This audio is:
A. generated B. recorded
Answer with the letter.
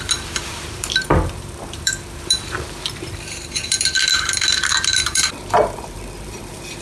A